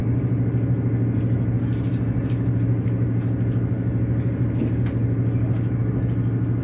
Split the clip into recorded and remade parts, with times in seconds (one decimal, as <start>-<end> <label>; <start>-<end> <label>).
0.0-6.6 recorded